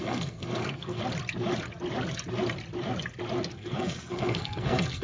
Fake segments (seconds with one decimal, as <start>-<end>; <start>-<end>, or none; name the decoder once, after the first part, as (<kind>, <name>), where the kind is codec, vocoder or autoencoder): 0.0-1.0 (codec, SNAC); 3.5-5.0